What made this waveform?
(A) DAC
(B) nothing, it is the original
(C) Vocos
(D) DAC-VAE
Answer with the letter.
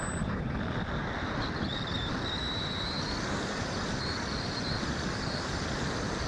B